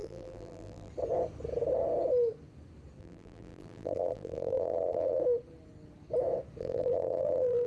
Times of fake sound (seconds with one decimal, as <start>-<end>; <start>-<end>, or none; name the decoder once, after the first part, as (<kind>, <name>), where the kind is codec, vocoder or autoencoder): 0.0-0.9 (vocoder, BigVGAN v2); 3.0-5.2; 6.6-7.7